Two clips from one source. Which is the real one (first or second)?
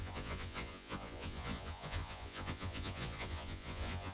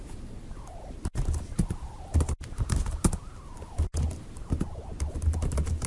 second